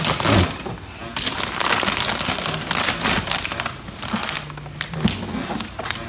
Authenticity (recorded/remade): recorded